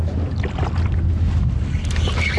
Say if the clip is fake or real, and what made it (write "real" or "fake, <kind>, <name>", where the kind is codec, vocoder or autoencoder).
real